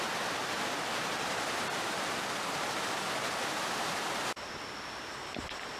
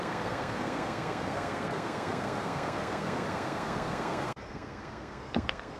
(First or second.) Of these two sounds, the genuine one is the first